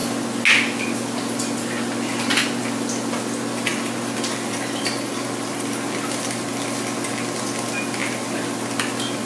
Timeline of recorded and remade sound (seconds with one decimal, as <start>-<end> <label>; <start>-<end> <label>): 0.0-9.2 recorded